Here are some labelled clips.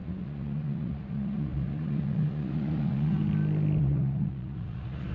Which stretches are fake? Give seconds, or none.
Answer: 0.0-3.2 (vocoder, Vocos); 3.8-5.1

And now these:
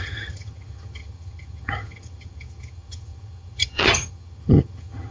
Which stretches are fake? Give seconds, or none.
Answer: 0.0-5.1 (vocoder, HiFi-GAN)

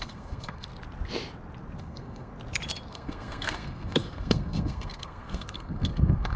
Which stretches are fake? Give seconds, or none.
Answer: 0.0-0.7 (codec, SNAC); 1.8-2.3; 2.9-6.4

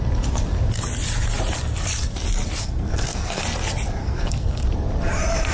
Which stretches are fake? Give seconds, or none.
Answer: 2.6-3.4 (codec, SNAC); 4.0-4.7

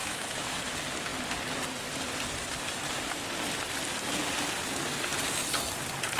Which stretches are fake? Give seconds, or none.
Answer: 0.0-0.6 (autoencoder, DAC-VAE)